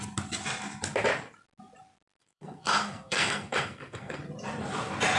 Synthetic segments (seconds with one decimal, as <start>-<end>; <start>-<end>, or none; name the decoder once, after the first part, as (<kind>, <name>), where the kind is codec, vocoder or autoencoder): 2.2-4.2 (codec, SNAC)